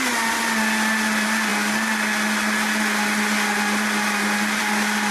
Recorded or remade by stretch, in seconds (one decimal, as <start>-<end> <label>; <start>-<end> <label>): 0.0-5.1 recorded